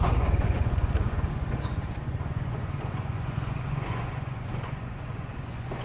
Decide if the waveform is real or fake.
fake